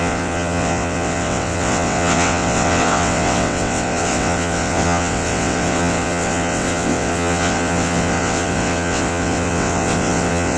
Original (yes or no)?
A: no